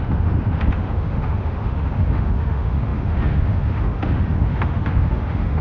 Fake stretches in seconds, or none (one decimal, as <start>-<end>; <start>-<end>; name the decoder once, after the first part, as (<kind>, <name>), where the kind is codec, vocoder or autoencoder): 0.0-5.6 (autoencoder, DAC-VAE)